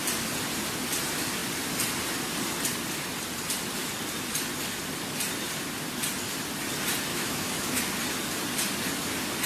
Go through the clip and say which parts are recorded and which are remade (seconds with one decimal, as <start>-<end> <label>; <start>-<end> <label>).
0.0-7.1 recorded; 7.1-7.8 remade; 7.8-9.5 recorded